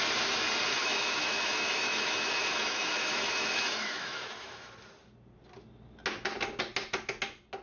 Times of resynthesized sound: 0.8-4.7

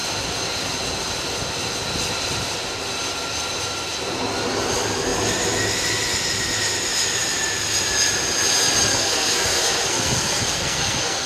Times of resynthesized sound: 8.9-11.3

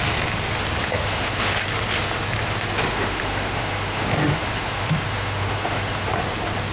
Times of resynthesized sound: 0.8-1.6; 2.9-6.1

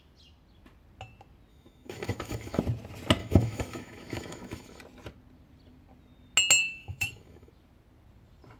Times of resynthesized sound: 1.5-2.6; 3.2-4.8; 6.6-7.5

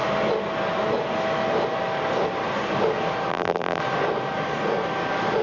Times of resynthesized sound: 3.3-3.8

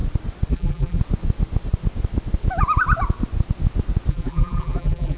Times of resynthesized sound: 0.5-1.0; 4.1-5.2

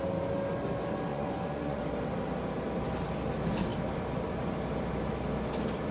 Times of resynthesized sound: 1.1-1.8

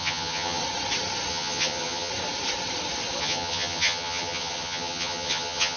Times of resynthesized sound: 0.0-0.6; 1.3-2.1; 3.2-5.8